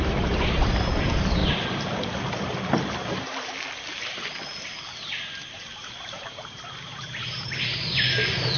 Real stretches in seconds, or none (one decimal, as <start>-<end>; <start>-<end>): 1.4-5.5